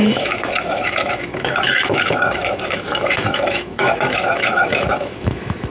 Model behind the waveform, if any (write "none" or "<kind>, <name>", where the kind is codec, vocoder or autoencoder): autoencoder, DAC-VAE